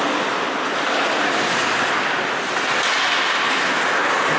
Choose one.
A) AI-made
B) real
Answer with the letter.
B